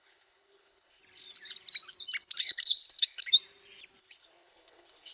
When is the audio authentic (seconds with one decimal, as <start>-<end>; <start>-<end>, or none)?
1.0-2.4; 3.3-4.0